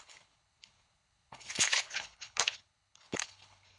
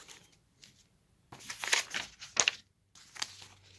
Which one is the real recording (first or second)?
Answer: second